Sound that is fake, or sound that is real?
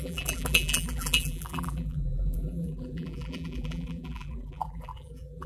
fake